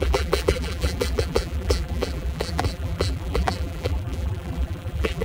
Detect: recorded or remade remade